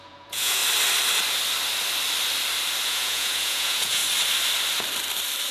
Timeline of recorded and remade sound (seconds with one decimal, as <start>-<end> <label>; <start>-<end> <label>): 0.0-0.6 remade; 0.6-2.9 recorded; 2.9-4.0 remade; 4.0-5.5 recorded